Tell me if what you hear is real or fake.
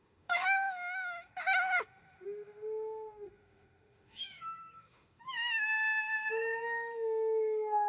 fake